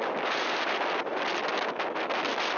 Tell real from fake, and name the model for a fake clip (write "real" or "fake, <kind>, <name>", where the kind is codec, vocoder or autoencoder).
real